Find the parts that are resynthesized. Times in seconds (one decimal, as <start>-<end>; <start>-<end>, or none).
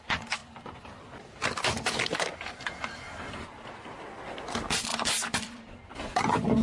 0.0-4.9; 5.4-6.6